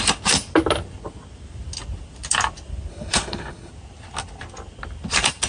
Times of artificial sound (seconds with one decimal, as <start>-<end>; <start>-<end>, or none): 2.9-3.7